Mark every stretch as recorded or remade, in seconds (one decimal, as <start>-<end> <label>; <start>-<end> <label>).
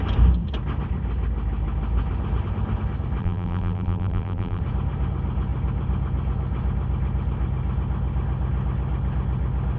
0.0-3.2 recorded; 3.2-4.6 remade; 4.6-9.8 recorded